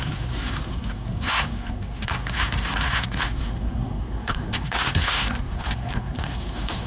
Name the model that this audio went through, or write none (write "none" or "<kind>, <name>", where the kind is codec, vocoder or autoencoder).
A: codec, SNAC